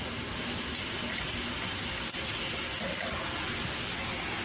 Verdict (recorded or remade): recorded